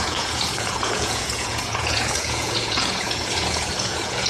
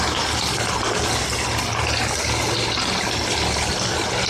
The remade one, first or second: first